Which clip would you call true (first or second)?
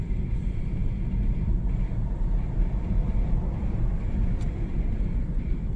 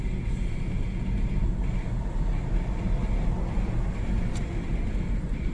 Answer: second